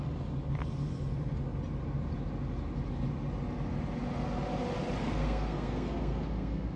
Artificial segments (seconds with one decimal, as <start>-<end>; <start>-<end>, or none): 5.0-6.8